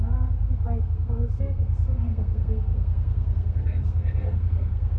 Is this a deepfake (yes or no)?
yes